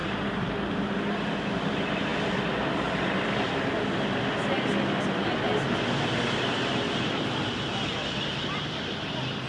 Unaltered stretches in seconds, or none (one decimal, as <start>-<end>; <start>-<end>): 0.0-9.5